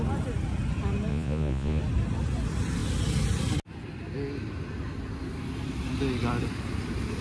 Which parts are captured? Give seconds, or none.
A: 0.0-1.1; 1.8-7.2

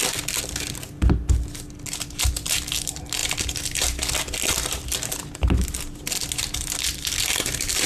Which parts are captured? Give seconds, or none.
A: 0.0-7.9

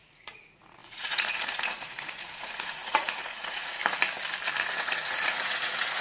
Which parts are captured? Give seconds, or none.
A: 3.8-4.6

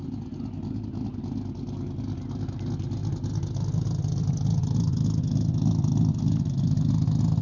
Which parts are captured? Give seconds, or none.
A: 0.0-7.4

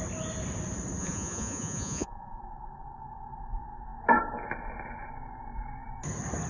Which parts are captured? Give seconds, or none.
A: 0.0-1.0; 2.4-6.5

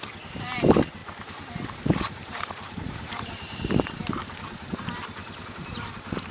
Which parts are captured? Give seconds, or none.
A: 5.2-5.7

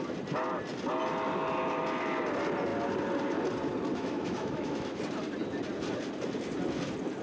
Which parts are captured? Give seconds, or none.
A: 0.0-3.9; 5.0-7.2